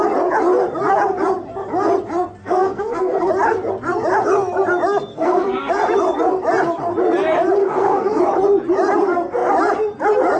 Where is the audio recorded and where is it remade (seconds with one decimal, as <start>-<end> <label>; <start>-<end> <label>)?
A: 0.0-2.4 recorded; 2.4-3.3 remade; 3.3-5.1 recorded; 5.1-5.7 remade; 5.7-7.6 recorded; 7.6-8.2 remade; 8.2-10.4 recorded